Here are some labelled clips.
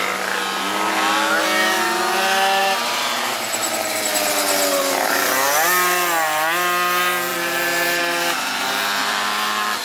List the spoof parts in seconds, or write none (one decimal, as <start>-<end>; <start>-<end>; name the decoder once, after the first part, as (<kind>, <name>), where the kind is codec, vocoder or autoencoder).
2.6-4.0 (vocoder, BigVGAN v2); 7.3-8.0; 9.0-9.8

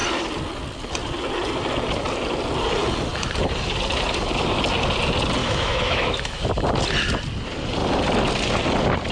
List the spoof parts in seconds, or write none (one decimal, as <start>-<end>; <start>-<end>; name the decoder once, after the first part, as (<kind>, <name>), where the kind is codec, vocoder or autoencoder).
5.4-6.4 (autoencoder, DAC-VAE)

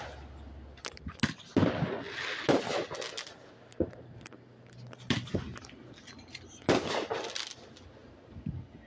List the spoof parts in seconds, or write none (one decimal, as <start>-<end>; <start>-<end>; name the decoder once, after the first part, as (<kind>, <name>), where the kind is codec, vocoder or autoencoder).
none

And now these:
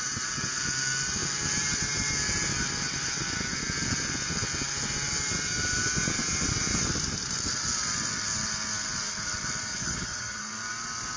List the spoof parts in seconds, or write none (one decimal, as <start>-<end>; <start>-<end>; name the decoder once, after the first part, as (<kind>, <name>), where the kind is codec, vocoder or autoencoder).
9.7-10.4 (vocoder, HiFi-GAN)